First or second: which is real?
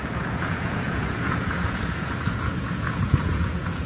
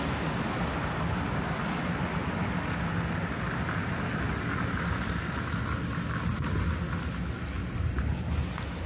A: second